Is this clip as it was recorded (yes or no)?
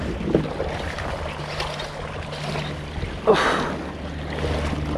yes